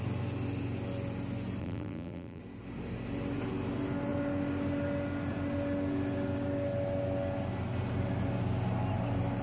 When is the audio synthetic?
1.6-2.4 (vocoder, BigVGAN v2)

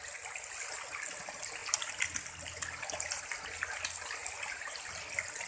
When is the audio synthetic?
4.2-4.9 (vocoder, BigVGAN v2)